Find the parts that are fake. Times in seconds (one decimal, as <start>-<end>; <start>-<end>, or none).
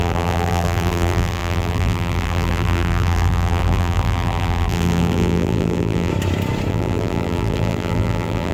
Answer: 0.0-6.1; 6.7-8.5